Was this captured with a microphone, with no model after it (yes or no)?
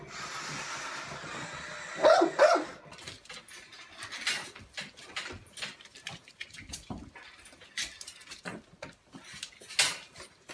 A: yes